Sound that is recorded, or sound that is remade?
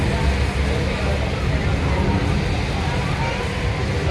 recorded